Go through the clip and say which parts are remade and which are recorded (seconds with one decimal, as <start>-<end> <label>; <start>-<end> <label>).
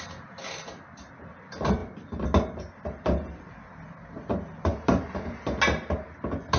0.0-6.6 recorded